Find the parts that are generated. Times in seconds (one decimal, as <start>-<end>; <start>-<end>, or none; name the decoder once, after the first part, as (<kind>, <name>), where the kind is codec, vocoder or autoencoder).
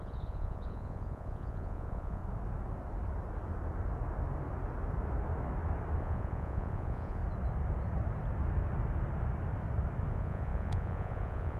0.0-2.2 (vocoder, Vocos); 6.0-7.2; 10.1-11.6